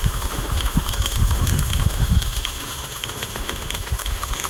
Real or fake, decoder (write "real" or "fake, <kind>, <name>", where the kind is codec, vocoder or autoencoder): fake, autoencoder, DAC-VAE